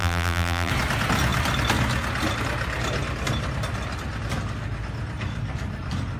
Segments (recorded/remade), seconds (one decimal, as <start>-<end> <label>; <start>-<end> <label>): 0.0-0.7 remade; 0.7-6.2 recorded